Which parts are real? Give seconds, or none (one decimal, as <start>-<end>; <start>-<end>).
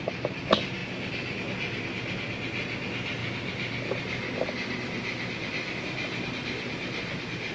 0.0-7.5